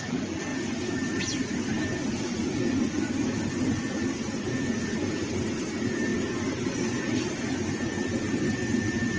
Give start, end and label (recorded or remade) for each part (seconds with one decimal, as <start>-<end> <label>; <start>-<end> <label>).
0.0-9.2 recorded